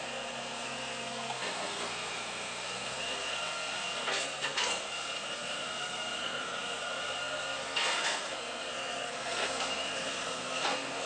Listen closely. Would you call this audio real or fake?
fake